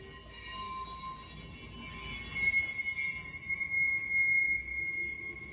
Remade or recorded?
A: recorded